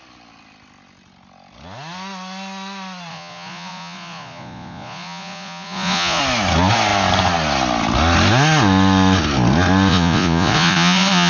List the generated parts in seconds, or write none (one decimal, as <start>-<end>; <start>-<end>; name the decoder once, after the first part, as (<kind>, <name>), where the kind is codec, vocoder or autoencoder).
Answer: 3.1-6.2 (vocoder, Vocos); 9.9-11.3